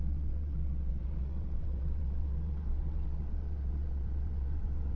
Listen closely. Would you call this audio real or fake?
fake